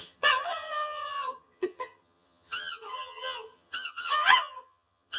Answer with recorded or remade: remade